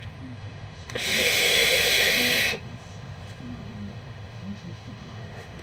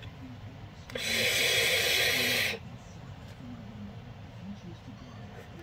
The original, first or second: second